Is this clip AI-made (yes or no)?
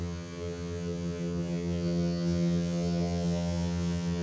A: yes